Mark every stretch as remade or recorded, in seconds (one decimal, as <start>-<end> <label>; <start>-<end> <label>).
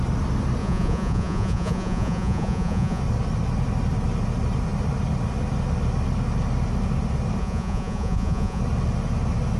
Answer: 0.0-0.6 recorded; 0.6-3.0 remade; 3.0-7.4 recorded; 7.4-8.6 remade; 8.6-9.6 recorded